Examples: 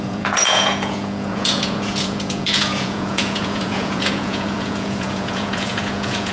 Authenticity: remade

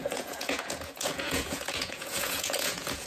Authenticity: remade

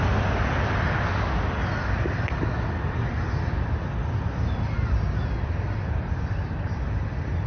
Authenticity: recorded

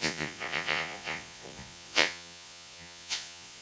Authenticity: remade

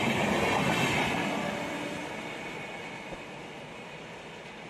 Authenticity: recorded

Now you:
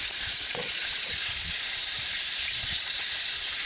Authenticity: remade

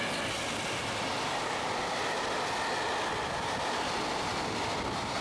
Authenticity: recorded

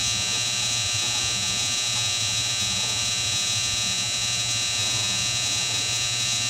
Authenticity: remade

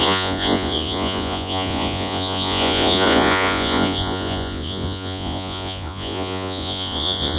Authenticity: remade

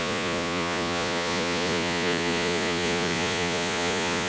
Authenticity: remade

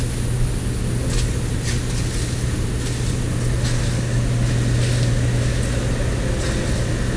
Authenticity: recorded